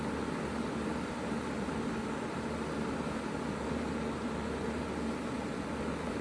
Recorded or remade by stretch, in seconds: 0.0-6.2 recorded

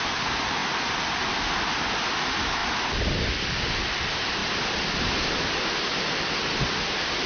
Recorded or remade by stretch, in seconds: 0.0-7.3 recorded

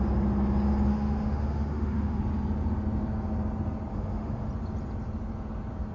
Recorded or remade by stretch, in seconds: 0.0-0.9 recorded; 0.9-2.2 remade; 2.2-3.9 recorded; 3.9-4.5 remade; 4.5-5.9 recorded

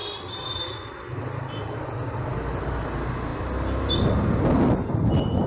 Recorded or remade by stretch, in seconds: 0.0-5.5 recorded

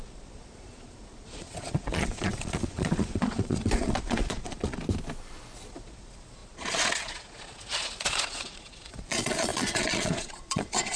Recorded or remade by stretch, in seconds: 0.0-4.8 remade; 4.8-5.7 recorded; 5.7-11.0 remade

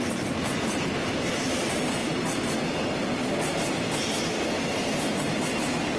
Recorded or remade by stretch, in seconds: 0.0-6.0 recorded